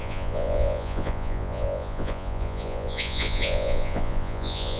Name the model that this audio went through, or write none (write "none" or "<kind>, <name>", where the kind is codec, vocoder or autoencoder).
vocoder, Vocos